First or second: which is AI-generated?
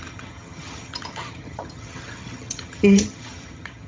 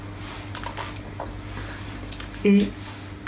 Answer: first